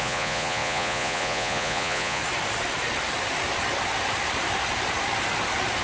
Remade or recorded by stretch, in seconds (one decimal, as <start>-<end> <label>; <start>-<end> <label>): 0.0-2.2 remade; 2.2-5.8 recorded